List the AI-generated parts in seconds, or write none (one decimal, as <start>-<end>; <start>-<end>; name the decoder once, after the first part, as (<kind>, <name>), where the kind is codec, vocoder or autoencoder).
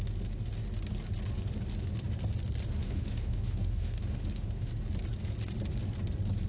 2.8-4.7 (autoencoder, DAC-VAE)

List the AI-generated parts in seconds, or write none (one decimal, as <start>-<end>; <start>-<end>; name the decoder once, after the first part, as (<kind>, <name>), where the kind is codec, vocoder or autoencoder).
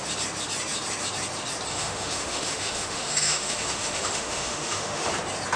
1.7-5.1 (autoencoder, DAC-VAE)